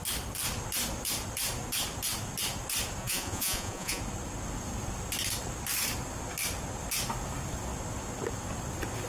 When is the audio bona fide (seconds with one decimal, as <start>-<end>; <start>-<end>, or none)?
0.0-3.0; 4.0-9.1